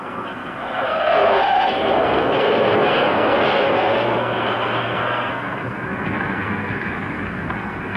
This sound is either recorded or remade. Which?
remade